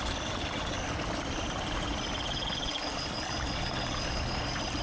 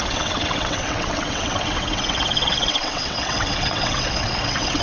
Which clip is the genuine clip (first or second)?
first